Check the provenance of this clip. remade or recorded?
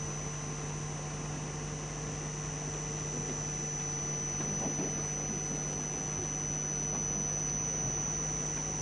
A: recorded